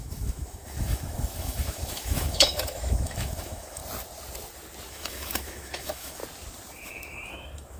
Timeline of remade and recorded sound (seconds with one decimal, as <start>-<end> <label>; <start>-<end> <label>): 0.0-3.8 remade; 3.8-4.9 recorded; 4.9-6.2 remade; 6.2-6.8 recorded; 6.8-7.8 remade